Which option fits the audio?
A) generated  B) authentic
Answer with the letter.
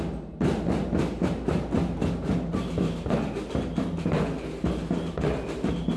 B